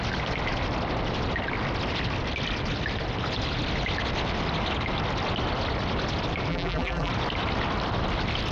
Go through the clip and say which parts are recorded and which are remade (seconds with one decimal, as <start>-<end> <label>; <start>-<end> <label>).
0.0-6.5 recorded; 6.5-7.1 remade; 7.1-8.5 recorded